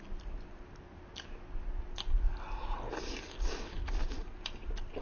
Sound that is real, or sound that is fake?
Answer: real